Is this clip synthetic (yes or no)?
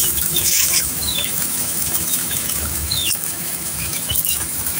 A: yes